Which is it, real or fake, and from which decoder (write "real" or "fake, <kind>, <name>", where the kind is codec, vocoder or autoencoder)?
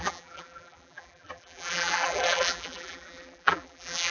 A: fake, vocoder, BigVGAN v2